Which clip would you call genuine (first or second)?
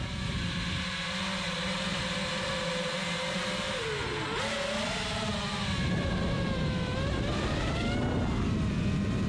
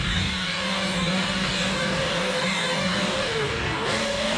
first